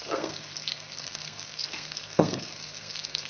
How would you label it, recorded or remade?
remade